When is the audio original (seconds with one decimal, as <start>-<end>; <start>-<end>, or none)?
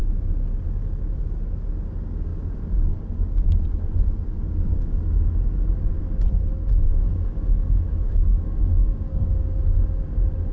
0.0-7.1; 9.3-10.5